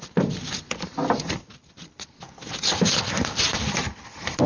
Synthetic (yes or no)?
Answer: no